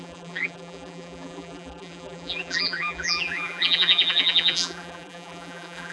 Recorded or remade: remade